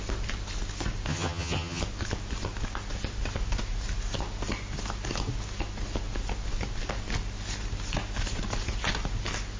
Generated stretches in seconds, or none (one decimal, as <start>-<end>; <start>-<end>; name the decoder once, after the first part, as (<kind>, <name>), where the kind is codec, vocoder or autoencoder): 1.1-1.8 (vocoder, HiFi-GAN)